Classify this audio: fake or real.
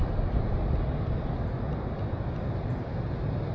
real